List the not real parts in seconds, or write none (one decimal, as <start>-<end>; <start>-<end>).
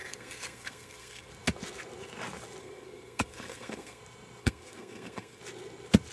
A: 0.0-1.3; 2.6-4.0; 4.4-5.4